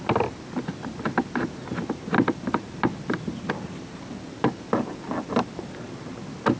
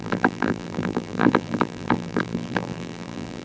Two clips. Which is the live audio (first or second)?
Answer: first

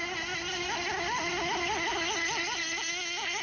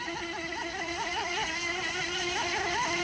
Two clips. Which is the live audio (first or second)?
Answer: first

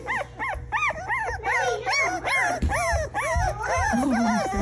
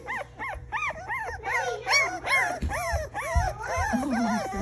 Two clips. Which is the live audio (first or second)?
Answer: first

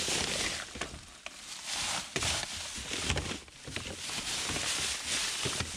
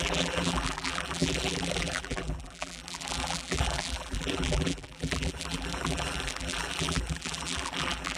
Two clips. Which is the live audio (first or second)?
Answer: first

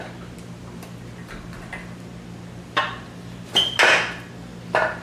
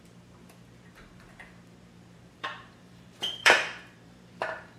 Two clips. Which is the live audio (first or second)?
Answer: first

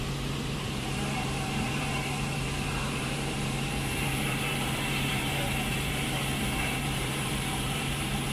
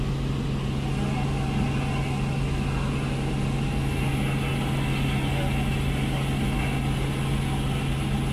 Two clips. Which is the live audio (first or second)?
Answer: second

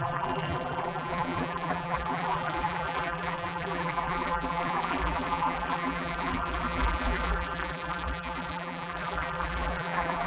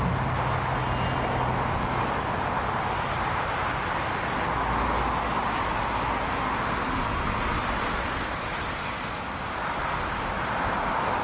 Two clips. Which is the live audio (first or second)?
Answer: second